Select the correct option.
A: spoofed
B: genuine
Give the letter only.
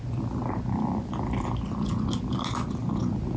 B